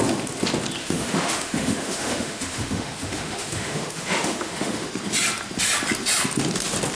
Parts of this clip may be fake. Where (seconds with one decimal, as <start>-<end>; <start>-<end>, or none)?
0.8-4.9